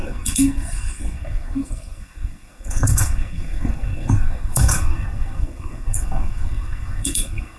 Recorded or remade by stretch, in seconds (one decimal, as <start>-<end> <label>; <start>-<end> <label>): 0.0-7.6 remade